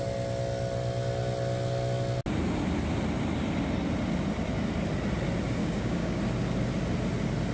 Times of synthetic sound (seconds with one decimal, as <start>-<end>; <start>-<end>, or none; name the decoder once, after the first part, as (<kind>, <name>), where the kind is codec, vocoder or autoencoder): 5.6-6.2 (codec, DAC)